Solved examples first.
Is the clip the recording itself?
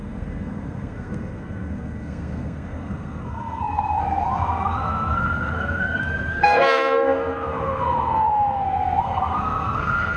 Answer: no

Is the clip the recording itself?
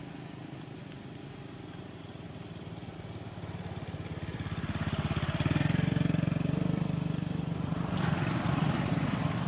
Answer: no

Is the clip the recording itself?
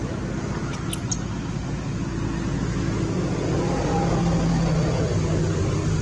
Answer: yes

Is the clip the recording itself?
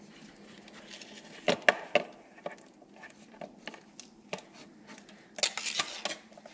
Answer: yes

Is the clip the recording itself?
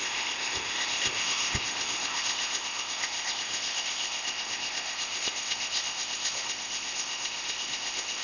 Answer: no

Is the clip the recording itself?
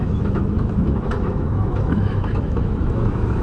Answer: no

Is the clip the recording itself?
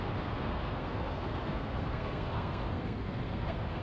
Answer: no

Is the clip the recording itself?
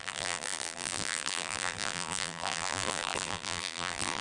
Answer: no